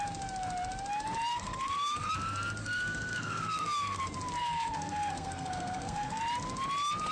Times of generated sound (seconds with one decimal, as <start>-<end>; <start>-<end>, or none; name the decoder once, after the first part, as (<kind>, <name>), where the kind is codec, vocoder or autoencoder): 1.3-2.1 (codec, SNAC); 2.6-4.0; 4.4-6.2